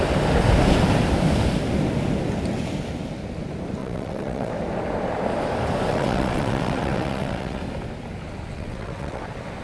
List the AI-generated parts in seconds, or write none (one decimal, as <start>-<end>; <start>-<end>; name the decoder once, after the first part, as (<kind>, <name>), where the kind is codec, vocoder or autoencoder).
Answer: 3.8-4.5 (vocoder, WaveNeXt); 5.9-7.6; 8.5-9.2

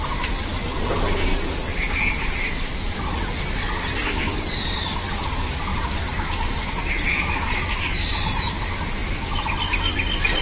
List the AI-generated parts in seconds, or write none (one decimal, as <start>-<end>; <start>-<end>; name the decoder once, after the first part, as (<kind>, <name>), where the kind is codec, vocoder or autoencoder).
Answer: 1.3-2.9 (vocoder, BigVGAN v2); 5.7-6.5